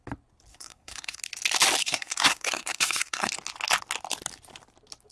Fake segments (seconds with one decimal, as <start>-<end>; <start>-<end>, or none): 0.5-1.2; 1.8-3.3